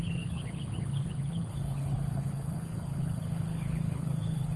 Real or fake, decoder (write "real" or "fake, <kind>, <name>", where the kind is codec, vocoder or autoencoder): fake, codec, HILCodec